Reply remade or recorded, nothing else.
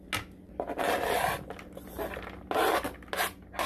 recorded